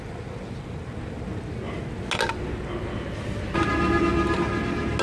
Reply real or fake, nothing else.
real